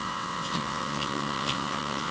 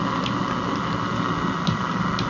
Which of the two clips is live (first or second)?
second